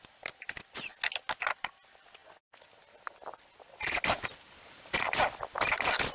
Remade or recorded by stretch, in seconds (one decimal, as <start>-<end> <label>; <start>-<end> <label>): 0.0-0.9 remade; 0.9-1.4 recorded; 1.4-2.2 remade; 2.2-4.4 recorded; 4.4-6.1 remade

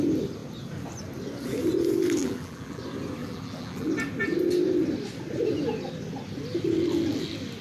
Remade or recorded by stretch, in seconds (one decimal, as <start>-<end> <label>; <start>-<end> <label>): 0.0-2.2 recorded; 2.2-2.8 remade; 2.8-3.2 recorded; 3.2-3.9 remade; 3.9-7.6 recorded

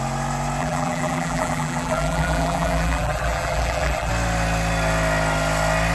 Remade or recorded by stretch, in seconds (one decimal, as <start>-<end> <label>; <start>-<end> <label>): 0.0-0.6 recorded; 0.6-4.1 remade; 4.1-5.9 recorded

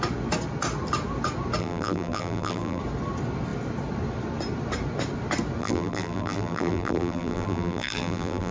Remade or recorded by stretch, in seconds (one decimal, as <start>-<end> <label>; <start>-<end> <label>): 0.0-1.6 recorded; 1.6-2.8 remade; 2.8-5.6 recorded; 5.6-8.5 remade

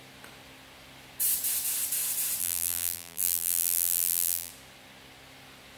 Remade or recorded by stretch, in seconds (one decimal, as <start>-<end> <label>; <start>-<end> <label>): 0.0-2.4 recorded; 2.4-4.5 remade; 4.5-5.8 recorded

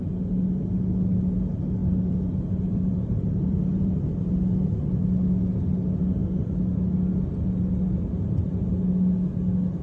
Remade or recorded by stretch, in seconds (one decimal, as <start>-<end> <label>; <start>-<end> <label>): 0.0-2.7 recorded; 2.7-4.3 remade; 4.3-9.8 recorded